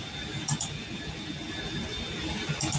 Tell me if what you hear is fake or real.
real